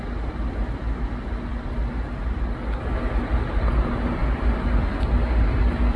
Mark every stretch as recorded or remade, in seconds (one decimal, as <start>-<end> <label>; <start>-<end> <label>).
0.0-6.0 recorded